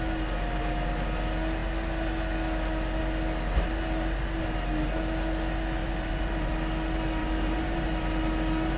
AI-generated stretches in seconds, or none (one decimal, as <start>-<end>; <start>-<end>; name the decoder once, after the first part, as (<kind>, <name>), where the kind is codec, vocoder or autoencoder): 5.8-6.5 (vocoder, BigVGAN v2); 7.2-7.9